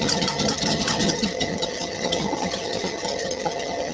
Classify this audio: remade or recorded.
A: remade